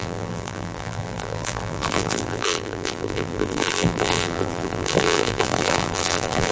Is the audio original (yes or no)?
no